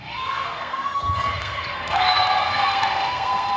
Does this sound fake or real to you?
fake